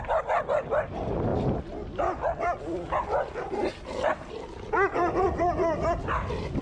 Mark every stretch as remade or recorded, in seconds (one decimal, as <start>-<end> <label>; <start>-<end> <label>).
0.0-6.6 recorded